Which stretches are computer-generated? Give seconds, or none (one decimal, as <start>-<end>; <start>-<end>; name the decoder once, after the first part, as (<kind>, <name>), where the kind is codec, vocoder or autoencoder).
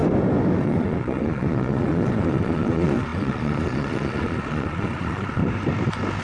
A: 0.6-5.4 (vocoder, Vocos)